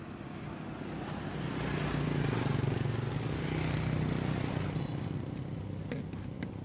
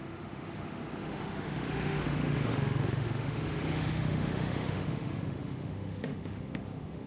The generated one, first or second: second